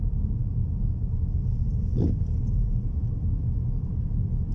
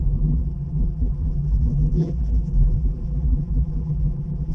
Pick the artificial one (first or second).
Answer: second